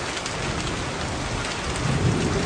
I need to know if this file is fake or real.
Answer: real